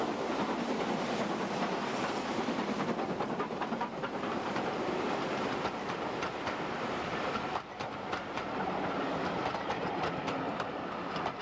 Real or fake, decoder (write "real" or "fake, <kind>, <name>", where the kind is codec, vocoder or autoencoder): fake, vocoder, BigVGAN v2